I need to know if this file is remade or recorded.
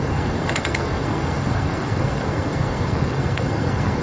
remade